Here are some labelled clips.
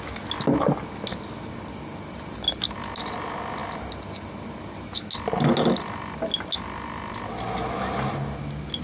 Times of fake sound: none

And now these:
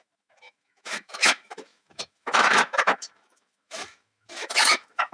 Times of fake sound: 0.0-5.1 (autoencoder, DAC-VAE)

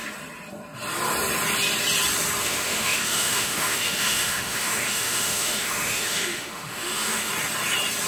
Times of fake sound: 2.4-7.3 (autoencoder, DAC-VAE)